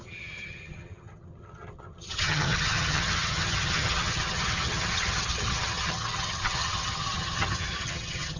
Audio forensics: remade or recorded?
remade